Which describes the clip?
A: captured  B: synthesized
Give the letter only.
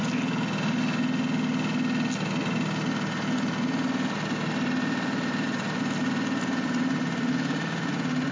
A